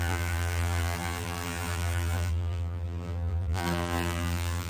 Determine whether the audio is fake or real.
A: fake